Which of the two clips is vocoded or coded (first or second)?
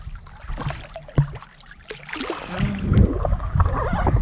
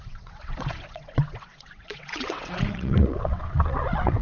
second